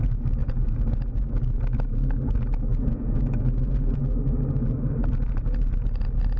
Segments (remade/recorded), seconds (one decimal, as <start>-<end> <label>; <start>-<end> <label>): 0.0-0.4 recorded; 0.4-1.0 remade; 1.0-2.7 recorded; 2.7-4.0 remade; 4.0-6.4 recorded